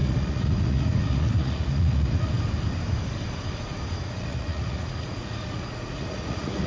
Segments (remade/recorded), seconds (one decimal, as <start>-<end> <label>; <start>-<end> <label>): 0.0-2.3 remade; 2.3-4.0 recorded; 4.0-6.7 remade